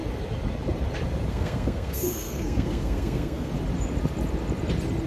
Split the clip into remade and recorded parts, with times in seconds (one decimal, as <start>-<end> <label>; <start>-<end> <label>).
0.0-1.3 recorded; 1.3-3.5 remade; 3.5-5.1 recorded